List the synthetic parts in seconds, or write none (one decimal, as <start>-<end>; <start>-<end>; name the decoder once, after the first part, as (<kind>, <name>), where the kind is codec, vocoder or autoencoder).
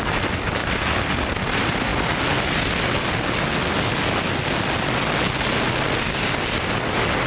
6.1-6.7 (codec, DAC)